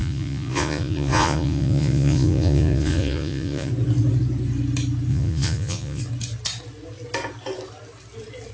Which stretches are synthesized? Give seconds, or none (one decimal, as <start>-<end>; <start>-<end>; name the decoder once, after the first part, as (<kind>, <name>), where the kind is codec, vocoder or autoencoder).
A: 0.0-3.7 (vocoder, Vocos); 5.1-6.0